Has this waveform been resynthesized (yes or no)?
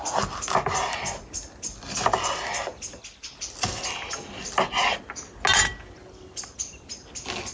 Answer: no